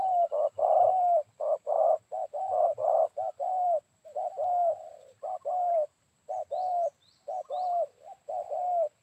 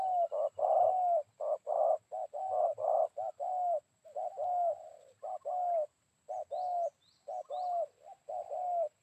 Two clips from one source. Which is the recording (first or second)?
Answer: second